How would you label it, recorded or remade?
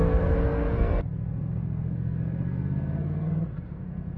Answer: remade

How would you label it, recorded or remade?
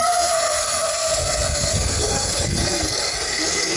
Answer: remade